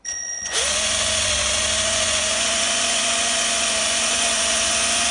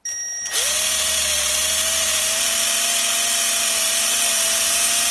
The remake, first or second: first